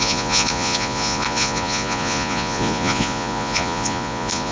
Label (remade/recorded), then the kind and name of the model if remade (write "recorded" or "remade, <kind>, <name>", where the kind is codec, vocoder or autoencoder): remade, vocoder, Vocos